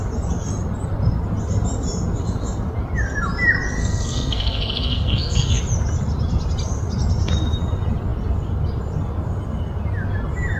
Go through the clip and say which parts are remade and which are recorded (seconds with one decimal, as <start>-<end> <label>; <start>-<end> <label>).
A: 0.0-3.8 recorded; 3.8-5.6 remade; 5.6-10.6 recorded